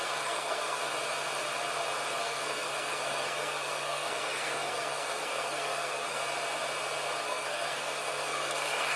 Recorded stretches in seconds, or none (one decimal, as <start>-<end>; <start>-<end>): 0.8-2.2; 6.2-7.2